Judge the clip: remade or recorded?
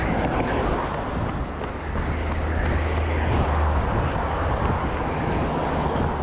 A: recorded